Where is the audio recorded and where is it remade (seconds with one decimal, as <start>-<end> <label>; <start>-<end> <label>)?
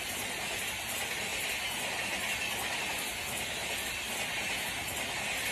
0.0-5.5 recorded